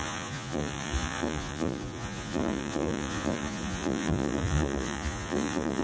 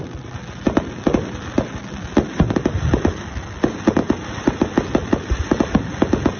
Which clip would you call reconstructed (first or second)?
first